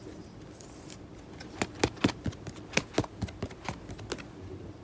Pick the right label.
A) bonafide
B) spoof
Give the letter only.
A